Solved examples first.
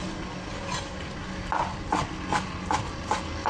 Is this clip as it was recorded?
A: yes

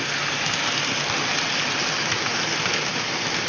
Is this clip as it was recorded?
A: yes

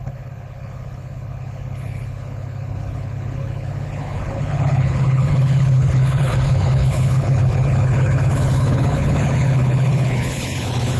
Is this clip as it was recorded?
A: no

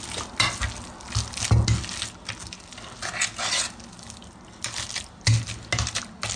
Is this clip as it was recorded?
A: yes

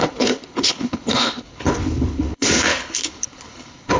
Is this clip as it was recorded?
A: no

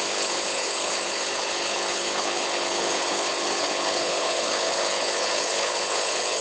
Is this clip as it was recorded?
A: no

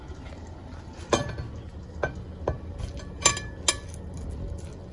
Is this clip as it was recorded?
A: yes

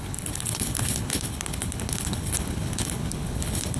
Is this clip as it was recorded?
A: no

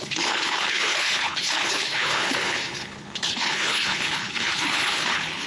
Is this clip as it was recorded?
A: no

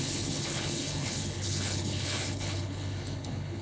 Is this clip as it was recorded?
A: no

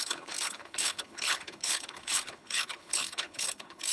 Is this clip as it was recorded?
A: no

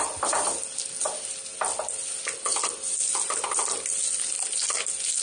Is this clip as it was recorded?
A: yes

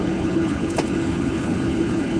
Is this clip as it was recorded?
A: no